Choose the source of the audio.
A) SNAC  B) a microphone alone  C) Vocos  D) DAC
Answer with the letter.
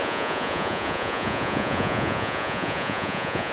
C